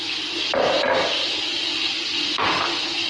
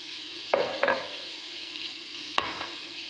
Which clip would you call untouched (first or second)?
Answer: first